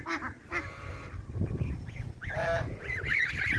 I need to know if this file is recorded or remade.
remade